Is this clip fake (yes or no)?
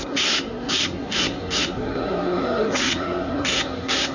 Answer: yes